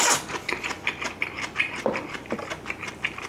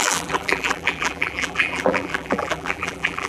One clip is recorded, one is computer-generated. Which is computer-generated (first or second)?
second